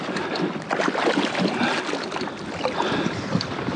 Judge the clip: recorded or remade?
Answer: recorded